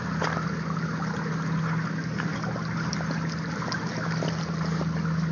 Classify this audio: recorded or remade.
recorded